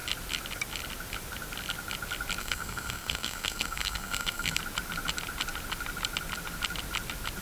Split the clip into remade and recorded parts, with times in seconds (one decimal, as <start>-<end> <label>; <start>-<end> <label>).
0.0-2.4 recorded; 2.4-4.6 remade; 4.6-7.4 recorded